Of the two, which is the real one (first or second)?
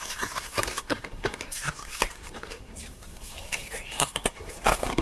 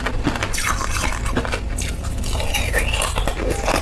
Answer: second